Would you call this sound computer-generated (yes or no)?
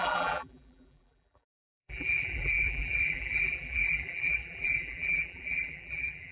yes